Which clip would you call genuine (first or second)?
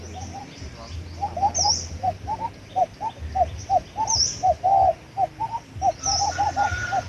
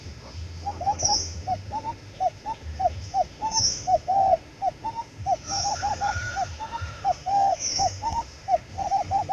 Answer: first